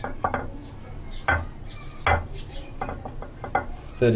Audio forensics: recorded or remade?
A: recorded